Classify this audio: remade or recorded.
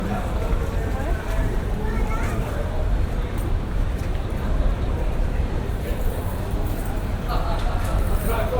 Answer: remade